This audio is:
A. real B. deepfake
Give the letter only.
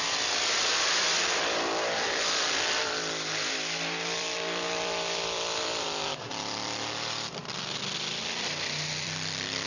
B